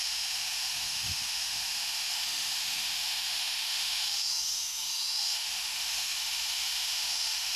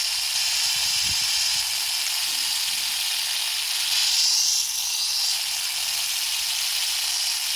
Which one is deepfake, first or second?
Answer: first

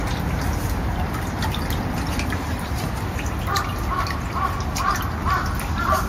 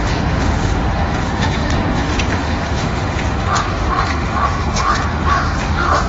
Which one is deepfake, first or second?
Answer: second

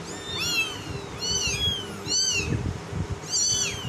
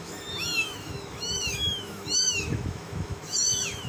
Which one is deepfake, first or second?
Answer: second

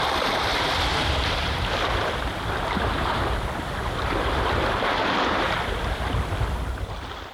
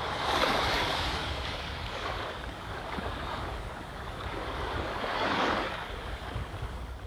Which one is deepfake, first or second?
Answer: second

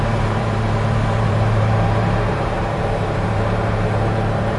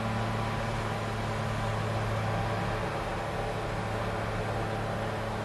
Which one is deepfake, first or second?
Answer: first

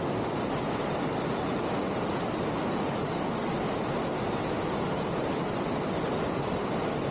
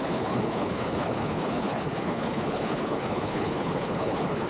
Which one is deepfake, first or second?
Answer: second